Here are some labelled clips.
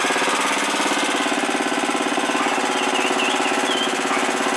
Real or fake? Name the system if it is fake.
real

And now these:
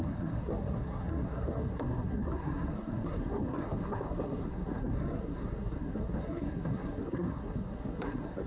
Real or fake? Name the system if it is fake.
fake, codec, SNAC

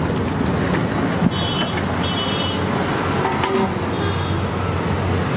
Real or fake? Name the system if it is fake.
real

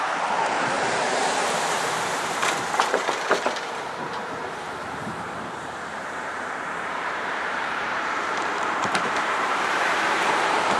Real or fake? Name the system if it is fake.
fake, vocoder, BigVGAN v2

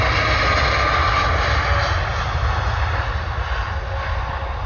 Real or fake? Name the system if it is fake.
real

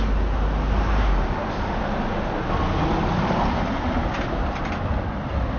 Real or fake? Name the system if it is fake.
real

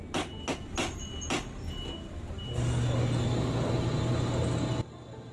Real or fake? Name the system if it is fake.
real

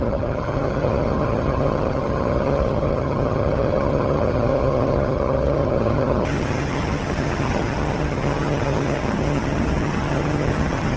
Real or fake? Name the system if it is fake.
fake, vocoder, HiFi-GAN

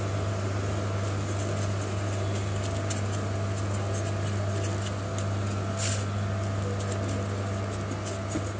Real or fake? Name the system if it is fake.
real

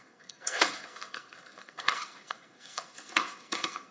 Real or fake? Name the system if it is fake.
fake, codec, SNAC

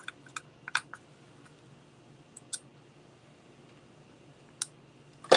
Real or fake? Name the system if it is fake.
real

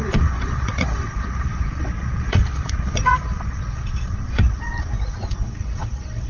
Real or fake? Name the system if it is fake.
fake, vocoder, Vocos